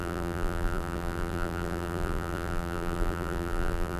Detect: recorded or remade remade